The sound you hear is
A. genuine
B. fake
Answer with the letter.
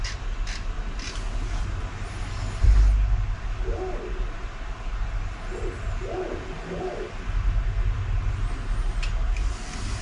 A